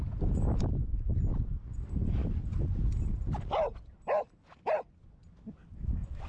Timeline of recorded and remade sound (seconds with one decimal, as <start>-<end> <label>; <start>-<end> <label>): 0.0-6.3 recorded